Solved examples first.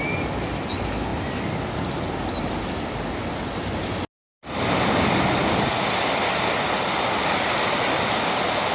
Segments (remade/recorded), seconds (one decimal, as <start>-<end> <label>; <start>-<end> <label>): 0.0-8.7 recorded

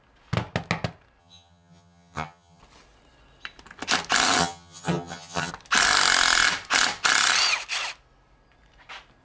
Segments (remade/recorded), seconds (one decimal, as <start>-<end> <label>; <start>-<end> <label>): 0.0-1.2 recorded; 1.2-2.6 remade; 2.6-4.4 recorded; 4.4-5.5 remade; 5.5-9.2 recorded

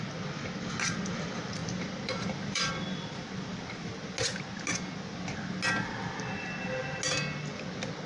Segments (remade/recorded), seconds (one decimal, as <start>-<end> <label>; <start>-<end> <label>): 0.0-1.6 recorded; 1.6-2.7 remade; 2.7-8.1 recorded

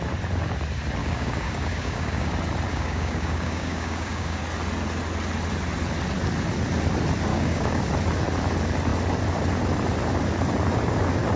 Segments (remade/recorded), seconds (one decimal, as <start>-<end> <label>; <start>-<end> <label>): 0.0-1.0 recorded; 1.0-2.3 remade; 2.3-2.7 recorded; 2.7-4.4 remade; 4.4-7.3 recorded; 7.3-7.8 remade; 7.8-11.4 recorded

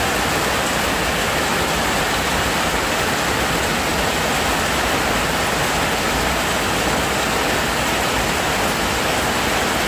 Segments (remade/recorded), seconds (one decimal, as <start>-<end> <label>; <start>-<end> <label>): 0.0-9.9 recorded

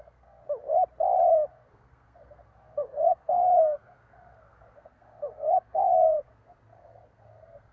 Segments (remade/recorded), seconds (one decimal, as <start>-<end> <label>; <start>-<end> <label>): 0.0-0.4 remade; 0.4-1.5 recorded; 1.5-7.7 remade